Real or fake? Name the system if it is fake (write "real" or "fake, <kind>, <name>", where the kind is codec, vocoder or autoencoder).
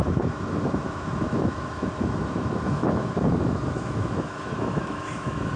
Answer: fake, autoencoder, DAC-VAE